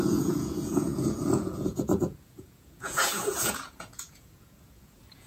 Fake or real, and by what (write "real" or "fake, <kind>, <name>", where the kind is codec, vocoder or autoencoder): fake, vocoder, Vocos